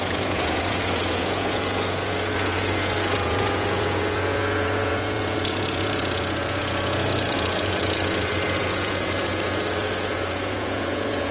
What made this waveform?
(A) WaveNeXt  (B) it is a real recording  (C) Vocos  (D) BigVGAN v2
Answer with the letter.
C